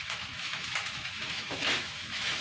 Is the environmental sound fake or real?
fake